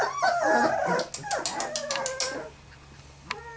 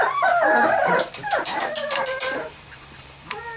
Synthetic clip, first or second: second